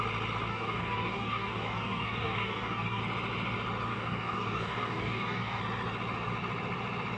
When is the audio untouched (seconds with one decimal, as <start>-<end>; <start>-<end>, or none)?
0.0-0.5; 3.0-3.9; 5.6-7.2